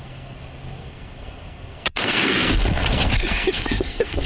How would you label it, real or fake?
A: fake